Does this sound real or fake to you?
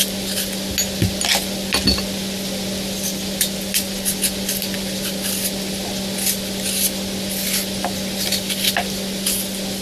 real